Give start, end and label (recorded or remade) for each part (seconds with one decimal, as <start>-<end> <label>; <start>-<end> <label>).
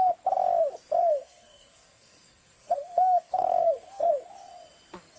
0.0-1.0 recorded; 1.0-4.1 remade; 4.1-5.2 recorded